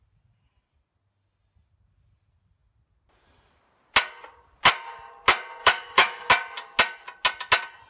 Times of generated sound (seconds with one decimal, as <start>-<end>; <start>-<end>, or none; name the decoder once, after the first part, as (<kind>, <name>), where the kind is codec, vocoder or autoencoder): 5.6-6.3 (autoencoder, DAC-VAE)